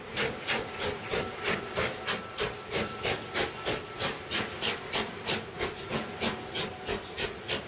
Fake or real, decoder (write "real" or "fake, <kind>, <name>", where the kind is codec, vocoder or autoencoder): real